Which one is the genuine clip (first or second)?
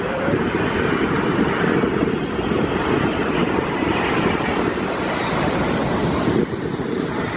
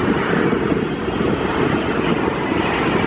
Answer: second